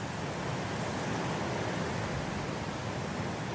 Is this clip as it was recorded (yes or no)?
yes